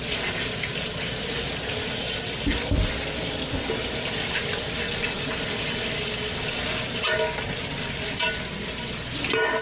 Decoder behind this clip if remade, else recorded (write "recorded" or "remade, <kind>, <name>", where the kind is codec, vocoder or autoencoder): recorded